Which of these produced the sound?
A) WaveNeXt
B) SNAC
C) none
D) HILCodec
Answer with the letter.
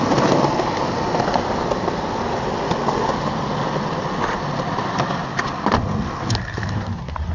C